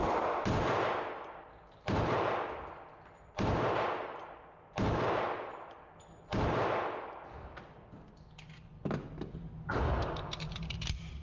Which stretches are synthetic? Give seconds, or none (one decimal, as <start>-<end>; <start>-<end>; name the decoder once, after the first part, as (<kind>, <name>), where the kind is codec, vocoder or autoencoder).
none